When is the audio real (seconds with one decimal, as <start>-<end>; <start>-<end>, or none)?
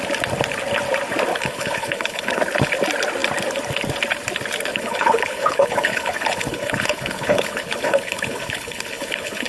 0.0-1.3; 2.4-4.7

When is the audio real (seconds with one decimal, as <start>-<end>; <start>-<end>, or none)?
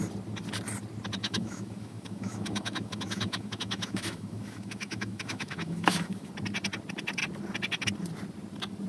0.0-1.2; 6.3-8.9